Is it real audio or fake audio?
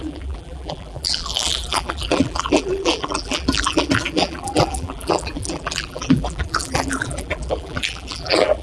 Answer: fake